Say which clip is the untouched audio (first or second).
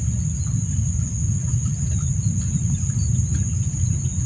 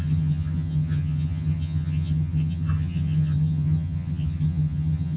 first